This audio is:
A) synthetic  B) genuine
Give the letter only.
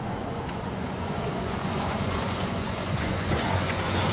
A